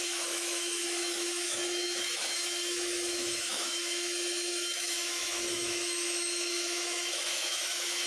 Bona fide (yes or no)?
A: no